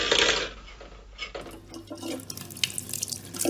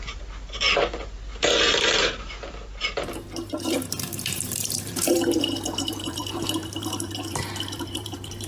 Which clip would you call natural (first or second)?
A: first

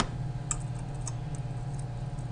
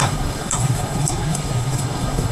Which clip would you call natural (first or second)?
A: first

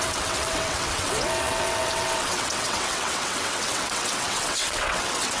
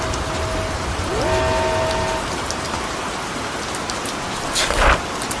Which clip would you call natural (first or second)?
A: second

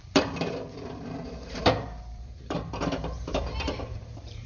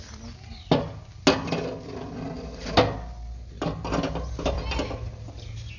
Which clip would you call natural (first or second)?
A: second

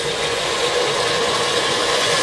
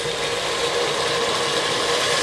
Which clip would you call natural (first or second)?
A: second